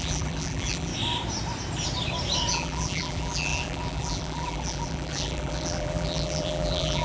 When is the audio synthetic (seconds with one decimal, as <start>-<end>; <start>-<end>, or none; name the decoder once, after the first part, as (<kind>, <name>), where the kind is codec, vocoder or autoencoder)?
0.0-0.9 (vocoder, BigVGAN v2); 2.5-7.0